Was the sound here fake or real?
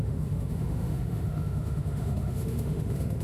fake